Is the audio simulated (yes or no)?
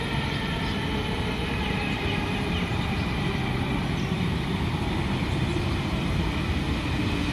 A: yes